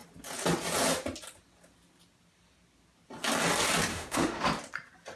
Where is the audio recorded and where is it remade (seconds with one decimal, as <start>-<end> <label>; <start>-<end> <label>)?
0.0-3.9 recorded; 3.9-4.4 remade; 4.4-5.2 recorded